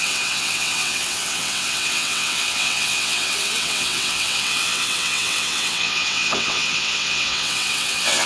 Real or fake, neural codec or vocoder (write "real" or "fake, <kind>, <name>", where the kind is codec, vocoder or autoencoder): fake, vocoder, WaveNeXt